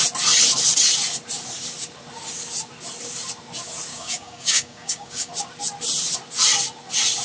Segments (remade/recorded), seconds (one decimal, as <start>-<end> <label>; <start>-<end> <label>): 0.0-3.9 recorded; 3.9-5.3 remade; 5.3-7.2 recorded